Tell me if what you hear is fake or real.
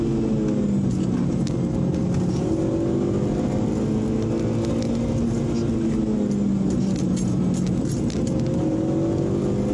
real